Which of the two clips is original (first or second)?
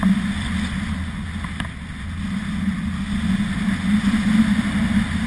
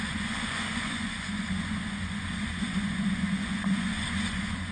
first